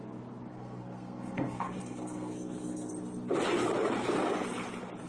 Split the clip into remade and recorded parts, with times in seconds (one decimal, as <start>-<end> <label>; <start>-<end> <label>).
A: 0.0-0.5 recorded; 0.5-2.9 remade; 2.9-5.1 recorded